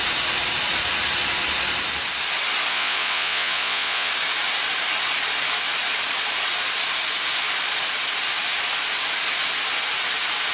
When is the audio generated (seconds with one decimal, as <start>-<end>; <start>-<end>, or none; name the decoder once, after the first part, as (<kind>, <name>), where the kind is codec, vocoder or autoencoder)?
2.7-4.1 (vocoder, Vocos)